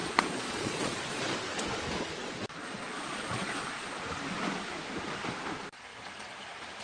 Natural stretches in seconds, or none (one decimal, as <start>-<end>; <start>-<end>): 1.2-2.6; 4.0-6.8